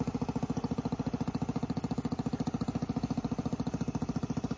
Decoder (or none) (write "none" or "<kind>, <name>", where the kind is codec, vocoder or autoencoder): none